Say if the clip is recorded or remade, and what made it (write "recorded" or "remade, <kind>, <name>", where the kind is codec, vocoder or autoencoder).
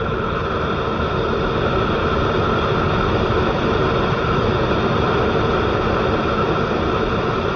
recorded